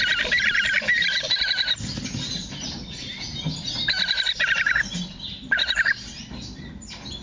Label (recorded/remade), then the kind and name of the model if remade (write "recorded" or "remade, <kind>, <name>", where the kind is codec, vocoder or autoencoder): recorded